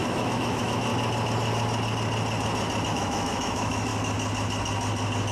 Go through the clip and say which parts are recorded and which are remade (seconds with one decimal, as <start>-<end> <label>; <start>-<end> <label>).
0.0-0.9 remade; 0.9-2.9 recorded; 2.9-3.9 remade; 3.9-5.3 recorded